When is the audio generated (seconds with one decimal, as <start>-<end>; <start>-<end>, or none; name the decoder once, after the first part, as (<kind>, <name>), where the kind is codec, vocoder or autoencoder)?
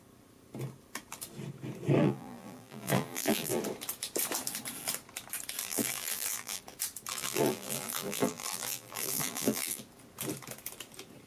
2.0-3.6 (vocoder, BigVGAN v2); 5.6-6.6; 7.1-9.8